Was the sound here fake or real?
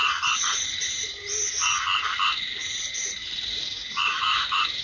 fake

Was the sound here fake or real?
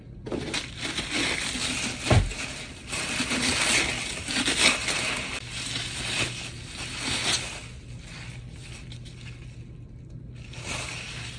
real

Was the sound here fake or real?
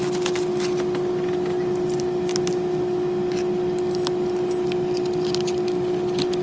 real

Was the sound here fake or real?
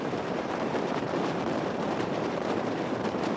fake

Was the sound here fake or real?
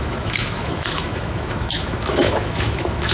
fake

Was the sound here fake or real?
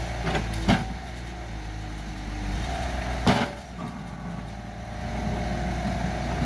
real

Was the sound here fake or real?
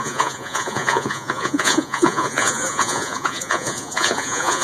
fake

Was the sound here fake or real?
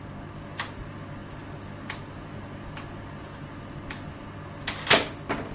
real